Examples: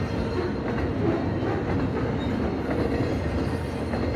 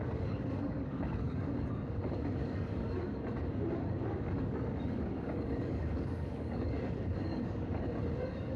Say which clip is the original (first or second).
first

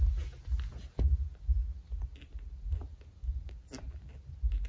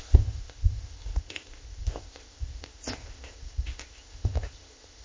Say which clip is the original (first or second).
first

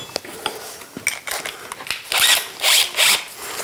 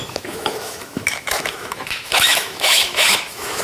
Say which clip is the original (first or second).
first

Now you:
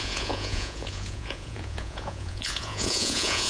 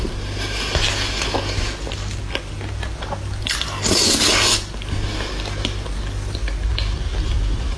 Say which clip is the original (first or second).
second